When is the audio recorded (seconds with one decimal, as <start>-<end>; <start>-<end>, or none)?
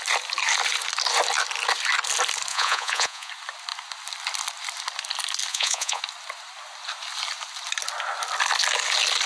0.0-2.5; 3.3-5.5; 6.0-9.3